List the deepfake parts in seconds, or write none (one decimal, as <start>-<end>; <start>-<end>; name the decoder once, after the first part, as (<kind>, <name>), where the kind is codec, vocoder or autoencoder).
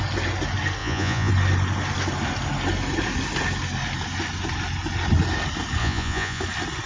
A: 0.8-1.3 (vocoder, Vocos); 5.8-6.4